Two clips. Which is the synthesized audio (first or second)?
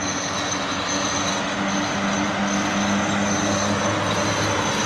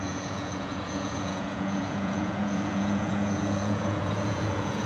second